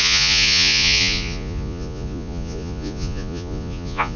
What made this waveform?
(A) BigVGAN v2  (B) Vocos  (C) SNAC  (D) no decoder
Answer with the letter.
B